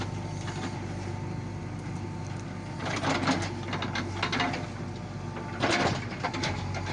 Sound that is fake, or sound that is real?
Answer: real